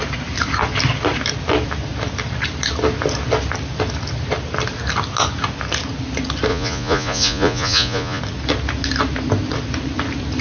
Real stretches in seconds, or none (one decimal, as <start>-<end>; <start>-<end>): 0.0-6.5; 8.2-10.4